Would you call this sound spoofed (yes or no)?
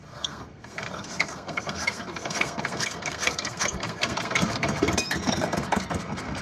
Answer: yes